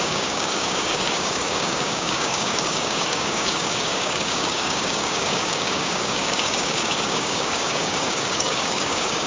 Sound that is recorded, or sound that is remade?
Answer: remade